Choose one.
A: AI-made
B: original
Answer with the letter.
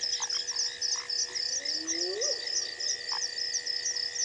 B